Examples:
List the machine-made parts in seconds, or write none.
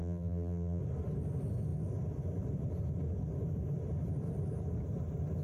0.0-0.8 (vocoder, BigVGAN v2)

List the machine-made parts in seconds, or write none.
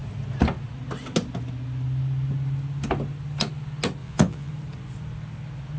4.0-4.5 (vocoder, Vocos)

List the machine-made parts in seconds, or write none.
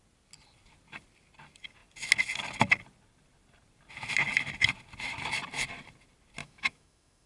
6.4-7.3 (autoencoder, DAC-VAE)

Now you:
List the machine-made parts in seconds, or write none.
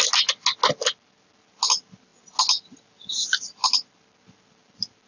none